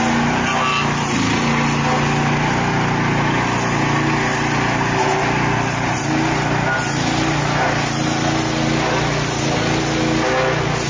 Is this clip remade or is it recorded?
recorded